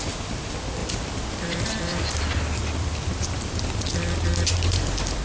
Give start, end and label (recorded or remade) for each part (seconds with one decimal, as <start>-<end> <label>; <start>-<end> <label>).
0.0-0.8 recorded; 0.8-3.9 remade; 3.9-4.3 recorded; 4.3-5.2 remade

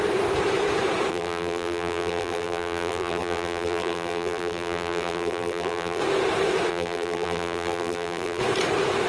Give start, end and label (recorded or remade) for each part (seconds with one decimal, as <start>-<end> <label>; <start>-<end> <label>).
0.0-1.1 recorded; 1.1-6.0 remade; 6.0-6.7 recorded; 6.7-8.4 remade; 8.4-9.1 recorded

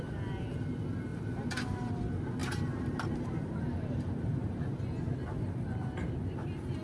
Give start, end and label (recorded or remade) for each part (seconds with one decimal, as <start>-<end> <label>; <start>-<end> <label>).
0.0-1.1 recorded; 1.1-1.9 remade; 1.9-2.4 recorded; 2.4-5.1 remade; 5.1-6.8 recorded